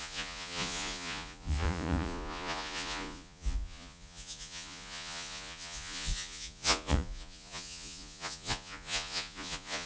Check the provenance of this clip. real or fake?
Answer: fake